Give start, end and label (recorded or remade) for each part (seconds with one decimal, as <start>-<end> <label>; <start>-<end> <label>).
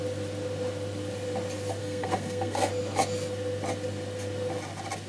0.0-1.8 recorded; 1.8-2.7 remade; 2.7-5.1 recorded